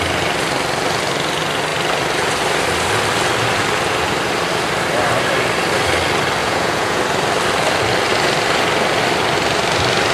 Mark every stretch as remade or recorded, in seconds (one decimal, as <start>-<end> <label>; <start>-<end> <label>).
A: 0.0-6.4 recorded; 6.4-7.0 remade; 7.0-10.1 recorded

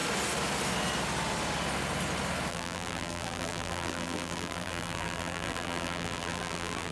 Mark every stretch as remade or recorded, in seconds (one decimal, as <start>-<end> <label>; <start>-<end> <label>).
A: 0.0-2.5 recorded; 2.5-6.9 remade

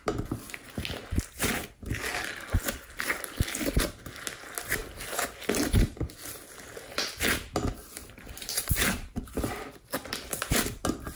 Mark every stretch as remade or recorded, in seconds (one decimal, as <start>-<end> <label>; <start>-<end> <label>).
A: 0.0-8.0 recorded; 8.0-9.2 remade; 9.2-11.2 recorded

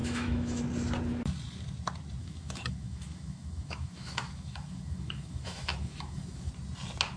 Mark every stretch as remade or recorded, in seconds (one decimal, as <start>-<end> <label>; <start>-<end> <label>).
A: 0.0-0.6 remade; 0.6-2.2 recorded; 2.2-6.5 remade; 6.5-7.2 recorded

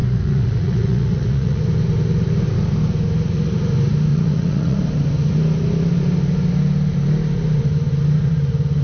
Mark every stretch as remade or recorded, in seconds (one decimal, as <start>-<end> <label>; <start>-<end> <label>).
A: 0.0-1.6 remade; 1.6-4.1 recorded; 4.1-4.8 remade; 4.8-8.8 recorded

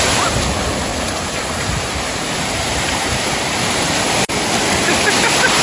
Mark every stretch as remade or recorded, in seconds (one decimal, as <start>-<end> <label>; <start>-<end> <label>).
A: 0.0-0.9 recorded; 0.9-4.3 remade; 4.3-5.6 recorded

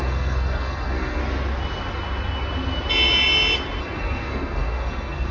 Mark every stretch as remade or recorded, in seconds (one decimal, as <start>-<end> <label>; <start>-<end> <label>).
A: 0.0-1.2 remade; 1.2-3.8 recorded; 3.8-5.3 remade

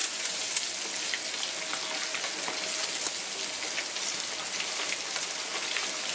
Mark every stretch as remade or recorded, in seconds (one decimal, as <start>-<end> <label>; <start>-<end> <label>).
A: 0.0-0.5 remade; 0.5-6.1 recorded